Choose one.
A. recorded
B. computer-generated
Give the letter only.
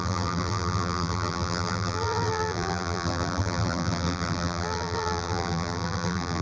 B